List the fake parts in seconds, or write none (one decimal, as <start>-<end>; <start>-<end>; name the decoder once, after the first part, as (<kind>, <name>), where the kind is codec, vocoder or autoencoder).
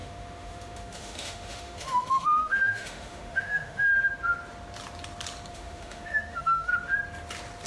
0.0-3.9 (autoencoder, DAC-VAE); 5.5-6.7